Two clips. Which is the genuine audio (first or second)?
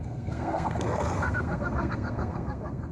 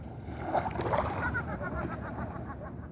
second